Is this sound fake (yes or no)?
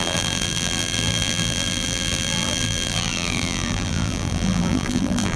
yes